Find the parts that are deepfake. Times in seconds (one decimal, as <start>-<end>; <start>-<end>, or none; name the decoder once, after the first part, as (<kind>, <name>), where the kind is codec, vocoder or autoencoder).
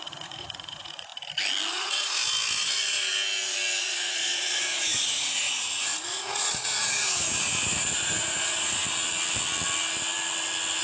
0.0-1.1 (vocoder, Vocos); 1.7-2.2; 3.8-8.8